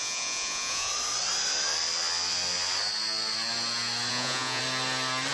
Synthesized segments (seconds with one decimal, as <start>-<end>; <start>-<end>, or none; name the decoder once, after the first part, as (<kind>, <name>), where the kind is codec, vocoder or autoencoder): 0.0-0.9 (vocoder, Vocos); 4.1-4.6